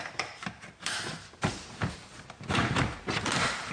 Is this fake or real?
fake